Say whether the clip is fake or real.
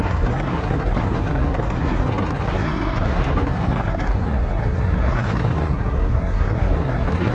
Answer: fake